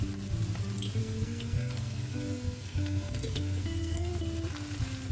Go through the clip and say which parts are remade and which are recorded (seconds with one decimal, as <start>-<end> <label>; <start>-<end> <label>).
0.0-1.0 recorded; 1.0-4.1 remade; 4.1-5.1 recorded